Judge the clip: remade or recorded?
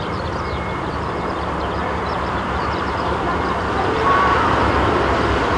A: remade